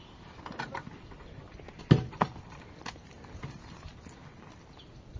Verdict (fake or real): real